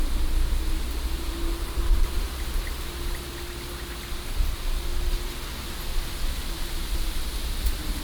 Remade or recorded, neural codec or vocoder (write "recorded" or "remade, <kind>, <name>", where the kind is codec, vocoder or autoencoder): recorded